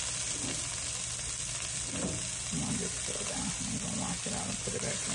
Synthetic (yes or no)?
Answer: no